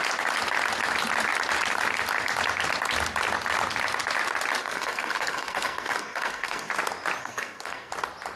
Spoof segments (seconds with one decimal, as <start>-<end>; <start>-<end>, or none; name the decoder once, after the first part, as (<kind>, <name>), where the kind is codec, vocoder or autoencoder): 4.6-6.7 (codec, SNAC); 7.2-7.9